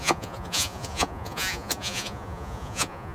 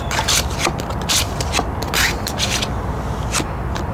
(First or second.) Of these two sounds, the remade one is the first